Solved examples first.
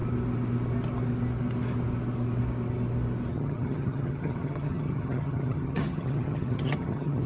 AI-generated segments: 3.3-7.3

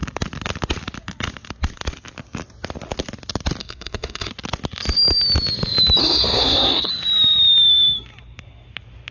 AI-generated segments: 3.6-4.3; 6.0-6.9

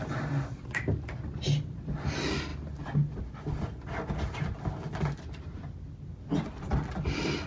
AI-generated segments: none

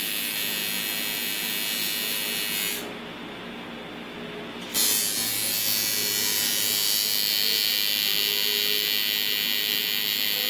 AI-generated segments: none